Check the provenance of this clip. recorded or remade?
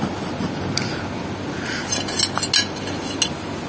recorded